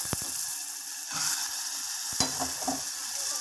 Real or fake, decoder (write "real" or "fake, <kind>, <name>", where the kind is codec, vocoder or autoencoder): real